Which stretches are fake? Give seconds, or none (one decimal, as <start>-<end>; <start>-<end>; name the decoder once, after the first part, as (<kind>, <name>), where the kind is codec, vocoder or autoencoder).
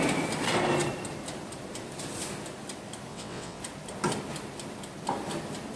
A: 3.1-3.6 (vocoder, WaveNeXt)